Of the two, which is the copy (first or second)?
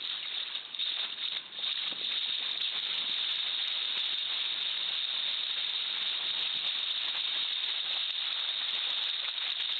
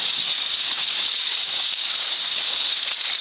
second